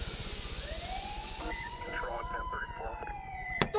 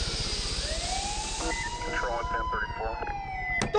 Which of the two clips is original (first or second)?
second